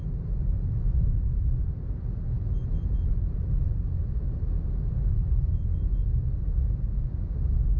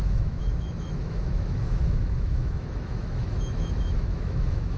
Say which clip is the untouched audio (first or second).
first